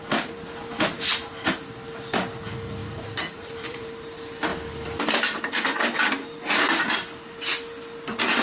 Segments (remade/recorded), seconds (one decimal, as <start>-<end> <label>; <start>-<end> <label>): 0.0-2.8 recorded; 2.8-3.9 remade; 3.9-8.4 recorded